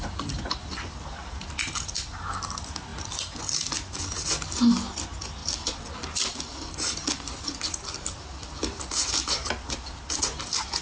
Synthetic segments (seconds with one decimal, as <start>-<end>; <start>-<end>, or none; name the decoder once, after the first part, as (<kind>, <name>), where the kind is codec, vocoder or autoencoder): 5.4-10.2 (vocoder, BigVGAN v2)